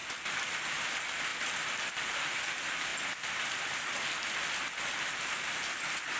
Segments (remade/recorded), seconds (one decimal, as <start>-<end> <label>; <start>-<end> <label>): 0.0-1.3 remade; 1.3-1.9 recorded; 1.9-2.9 remade; 2.9-6.2 recorded